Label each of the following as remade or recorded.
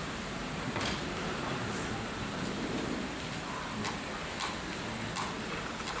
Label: recorded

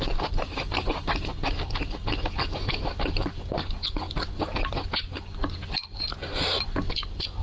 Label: recorded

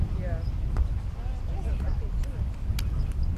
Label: recorded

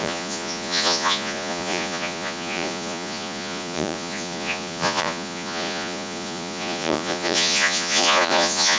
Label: remade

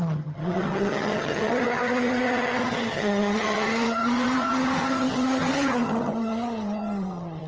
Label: remade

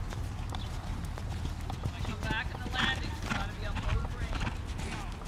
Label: recorded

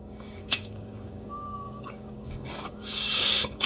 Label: remade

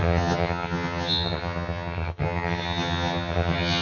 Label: remade